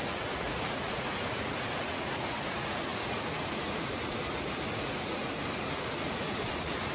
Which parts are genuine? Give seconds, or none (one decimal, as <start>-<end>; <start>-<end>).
none